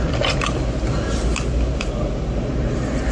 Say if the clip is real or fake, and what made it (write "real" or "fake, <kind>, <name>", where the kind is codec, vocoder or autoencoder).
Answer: real